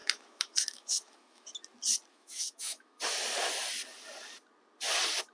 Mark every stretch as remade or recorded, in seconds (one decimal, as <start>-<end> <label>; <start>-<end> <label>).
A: 0.0-1.5 remade; 1.5-2.1 recorded; 2.1-3.0 remade; 3.0-5.3 recorded